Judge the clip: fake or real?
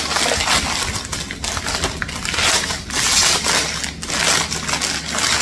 real